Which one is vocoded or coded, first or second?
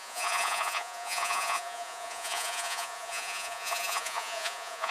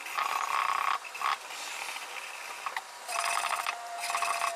first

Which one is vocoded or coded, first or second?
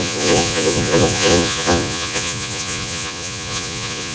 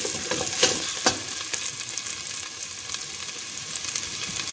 first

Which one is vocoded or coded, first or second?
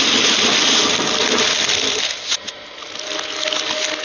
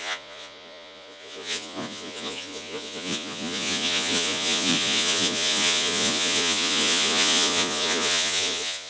second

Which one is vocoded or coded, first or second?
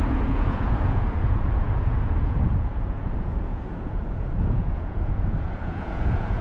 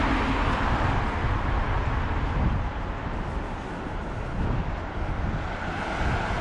first